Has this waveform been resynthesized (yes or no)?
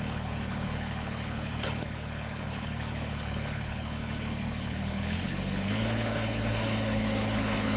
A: yes